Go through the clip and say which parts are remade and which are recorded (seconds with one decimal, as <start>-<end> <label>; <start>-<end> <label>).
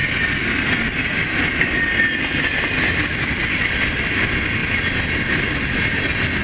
0.0-6.4 recorded